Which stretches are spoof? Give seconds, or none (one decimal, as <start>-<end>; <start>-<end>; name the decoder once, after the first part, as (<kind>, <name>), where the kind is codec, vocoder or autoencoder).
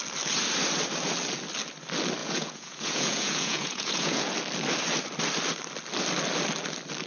2.2-4.2 (vocoder, Vocos)